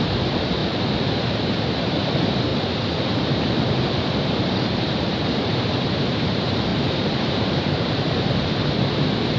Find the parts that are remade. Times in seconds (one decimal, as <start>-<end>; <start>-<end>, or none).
0.0-0.6; 1.2-2.5; 4.2-9.4